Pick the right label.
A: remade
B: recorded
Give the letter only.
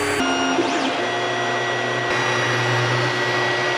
B